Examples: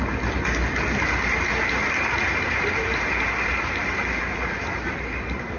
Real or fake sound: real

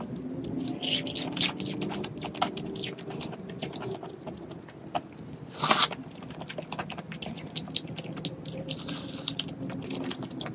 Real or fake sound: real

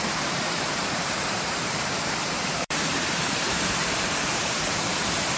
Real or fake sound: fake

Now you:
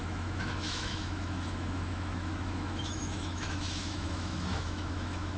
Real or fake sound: fake